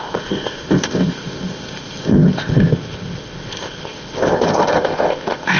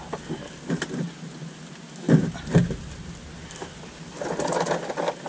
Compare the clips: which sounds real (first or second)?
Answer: second